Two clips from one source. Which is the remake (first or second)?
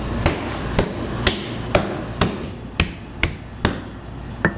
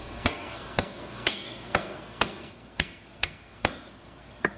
second